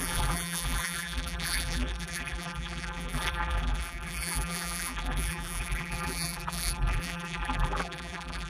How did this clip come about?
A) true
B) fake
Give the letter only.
B